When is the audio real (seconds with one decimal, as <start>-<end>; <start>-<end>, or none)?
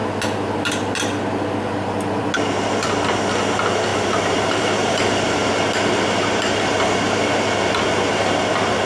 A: 0.0-3.9; 5.5-8.9